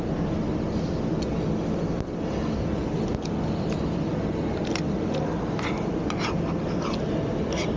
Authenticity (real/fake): real